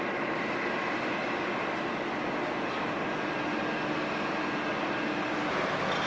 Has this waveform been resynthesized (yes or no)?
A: no